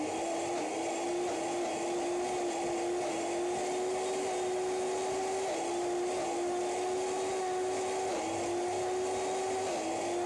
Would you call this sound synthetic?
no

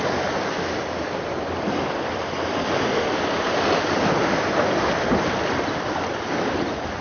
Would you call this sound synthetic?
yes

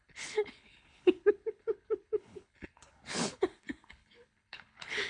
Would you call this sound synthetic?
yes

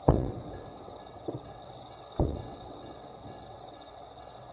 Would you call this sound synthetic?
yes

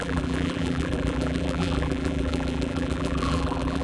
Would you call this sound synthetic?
yes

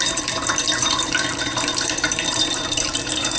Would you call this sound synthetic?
yes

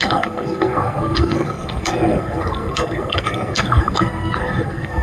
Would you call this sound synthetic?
yes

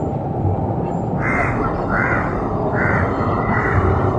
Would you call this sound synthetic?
yes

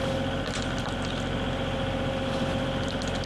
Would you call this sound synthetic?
no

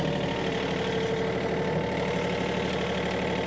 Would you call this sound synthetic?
no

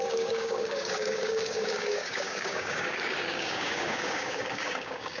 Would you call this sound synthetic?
yes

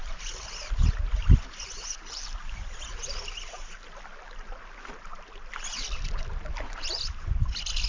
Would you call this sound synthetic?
no